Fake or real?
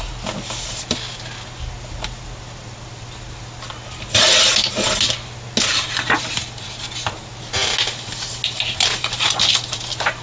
real